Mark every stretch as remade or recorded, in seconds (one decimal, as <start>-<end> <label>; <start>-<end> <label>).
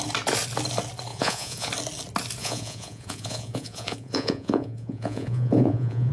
0.0-1.1 recorded; 1.1-1.7 remade; 1.7-2.4 recorded; 2.4-6.1 remade